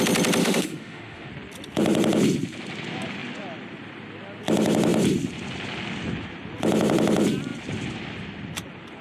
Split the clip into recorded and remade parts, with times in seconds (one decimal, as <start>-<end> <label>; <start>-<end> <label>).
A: 0.0-0.4 recorded; 0.4-1.3 remade; 1.3-9.0 recorded